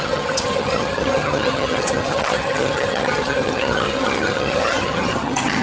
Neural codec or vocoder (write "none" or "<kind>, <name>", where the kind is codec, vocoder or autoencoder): vocoder, HiFi-GAN